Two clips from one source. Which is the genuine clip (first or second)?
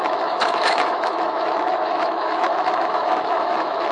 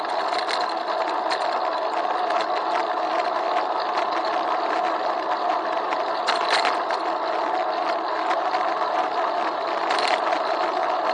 second